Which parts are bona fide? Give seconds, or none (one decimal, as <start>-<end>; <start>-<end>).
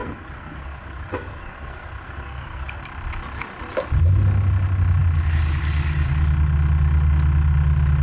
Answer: 2.8-8.0